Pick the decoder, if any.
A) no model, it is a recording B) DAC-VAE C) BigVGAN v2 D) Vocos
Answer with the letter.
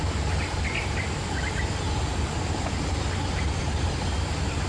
A